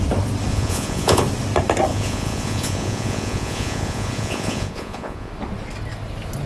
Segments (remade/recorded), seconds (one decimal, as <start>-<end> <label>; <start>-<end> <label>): 0.0-0.5 recorded; 0.5-1.2 remade; 1.2-1.9 recorded; 1.9-5.3 remade; 5.3-6.5 recorded